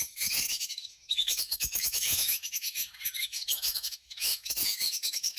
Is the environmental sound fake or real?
fake